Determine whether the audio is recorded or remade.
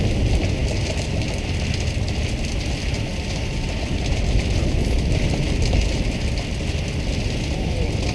recorded